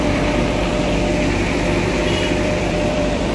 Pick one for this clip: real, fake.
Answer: fake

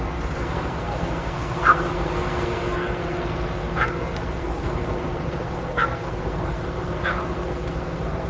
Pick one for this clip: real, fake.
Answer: fake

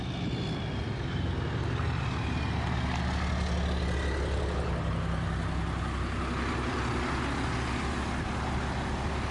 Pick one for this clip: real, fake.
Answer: real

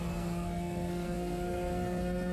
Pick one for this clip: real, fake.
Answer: fake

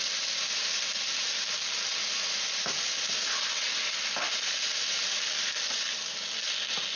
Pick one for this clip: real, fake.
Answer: real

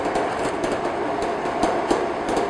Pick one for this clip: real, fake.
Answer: real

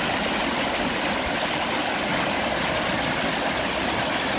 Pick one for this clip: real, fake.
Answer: real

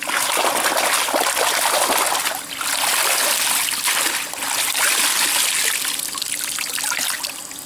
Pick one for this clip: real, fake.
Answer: real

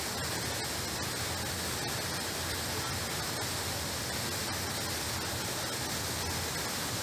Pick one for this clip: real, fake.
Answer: real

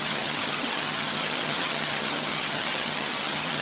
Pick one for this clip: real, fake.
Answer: fake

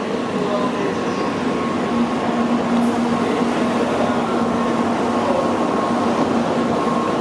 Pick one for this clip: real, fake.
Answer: real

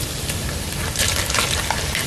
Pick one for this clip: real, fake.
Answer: real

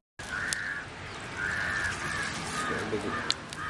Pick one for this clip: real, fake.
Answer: real